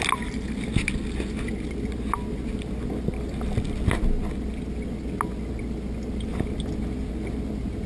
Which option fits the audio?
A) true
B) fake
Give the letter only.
A